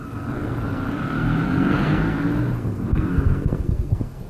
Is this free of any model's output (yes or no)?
no